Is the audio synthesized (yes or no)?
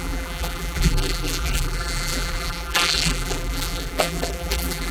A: yes